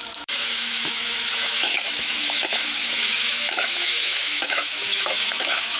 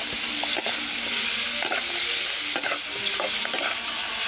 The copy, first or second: first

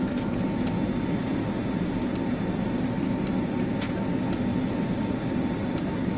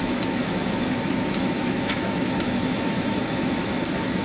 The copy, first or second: second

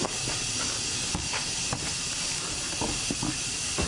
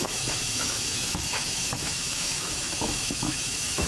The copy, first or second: second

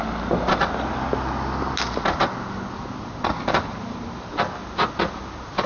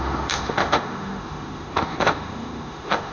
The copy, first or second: second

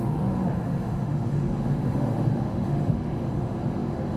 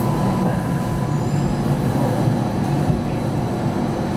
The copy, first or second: first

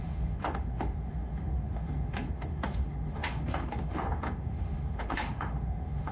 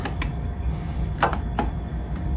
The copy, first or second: first